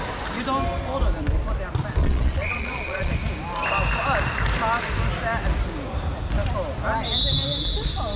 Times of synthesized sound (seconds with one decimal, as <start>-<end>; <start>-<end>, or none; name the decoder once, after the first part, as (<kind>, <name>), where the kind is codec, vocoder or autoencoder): 2.0-3.1 (vocoder, Vocos)